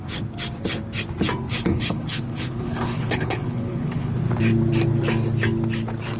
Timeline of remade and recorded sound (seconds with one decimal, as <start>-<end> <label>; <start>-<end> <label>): 0.0-1.5 recorded; 1.5-4.1 remade; 4.1-6.2 recorded